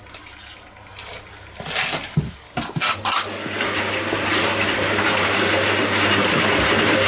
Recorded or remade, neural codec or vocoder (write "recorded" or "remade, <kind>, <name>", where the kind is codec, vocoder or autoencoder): recorded